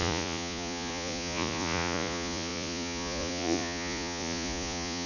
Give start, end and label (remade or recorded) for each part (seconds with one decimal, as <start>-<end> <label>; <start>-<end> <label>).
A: 0.0-5.1 remade